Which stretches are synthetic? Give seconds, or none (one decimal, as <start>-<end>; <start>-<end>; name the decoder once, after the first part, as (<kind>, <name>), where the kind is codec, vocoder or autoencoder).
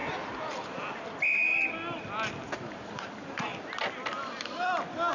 none